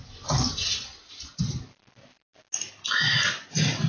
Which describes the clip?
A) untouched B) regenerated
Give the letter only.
A